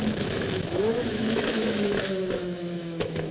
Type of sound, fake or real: fake